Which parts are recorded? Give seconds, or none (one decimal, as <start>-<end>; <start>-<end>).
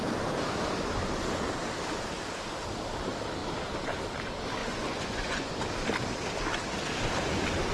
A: 0.0-4.6; 5.5-7.7